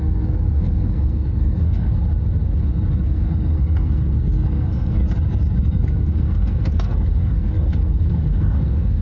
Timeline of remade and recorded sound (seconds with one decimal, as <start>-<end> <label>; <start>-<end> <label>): 0.0-2.0 remade; 2.0-3.0 recorded; 3.0-5.0 remade; 5.0-5.6 recorded; 5.6-9.0 remade